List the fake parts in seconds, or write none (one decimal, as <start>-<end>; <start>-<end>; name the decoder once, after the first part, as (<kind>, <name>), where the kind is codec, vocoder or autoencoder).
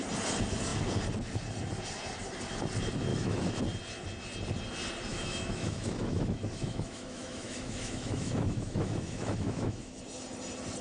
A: 3.1-3.6 (autoencoder, DAC-VAE); 5.1-10.0